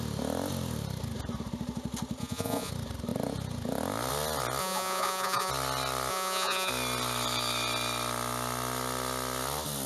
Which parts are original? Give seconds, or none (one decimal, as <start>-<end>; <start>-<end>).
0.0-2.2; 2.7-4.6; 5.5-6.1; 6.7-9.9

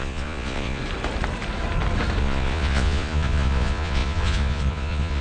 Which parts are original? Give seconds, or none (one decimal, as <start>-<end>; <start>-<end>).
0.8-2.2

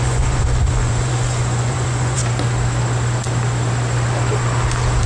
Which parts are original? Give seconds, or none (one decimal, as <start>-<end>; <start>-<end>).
2.2-5.1

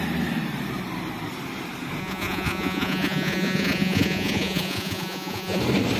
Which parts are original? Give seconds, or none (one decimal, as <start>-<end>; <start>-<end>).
0.0-2.0; 5.6-6.0